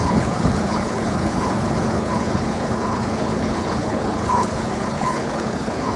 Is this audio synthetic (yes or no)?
yes